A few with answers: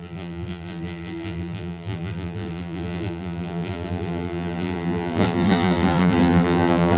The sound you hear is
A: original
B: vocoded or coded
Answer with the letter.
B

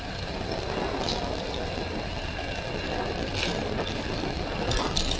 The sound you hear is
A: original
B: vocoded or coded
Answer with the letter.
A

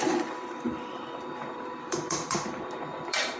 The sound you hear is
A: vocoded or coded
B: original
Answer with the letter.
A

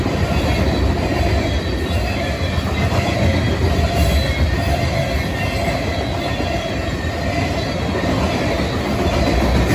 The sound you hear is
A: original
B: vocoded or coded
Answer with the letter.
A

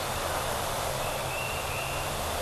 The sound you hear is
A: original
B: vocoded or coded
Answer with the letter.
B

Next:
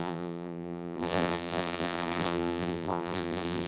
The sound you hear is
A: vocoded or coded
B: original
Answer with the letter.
A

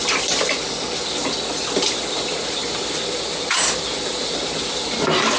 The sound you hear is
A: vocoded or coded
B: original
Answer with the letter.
B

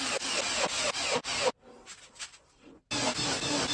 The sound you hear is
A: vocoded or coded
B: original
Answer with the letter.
B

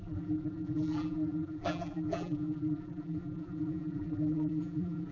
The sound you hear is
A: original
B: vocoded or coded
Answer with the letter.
B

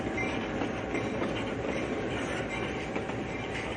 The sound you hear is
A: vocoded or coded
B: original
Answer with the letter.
A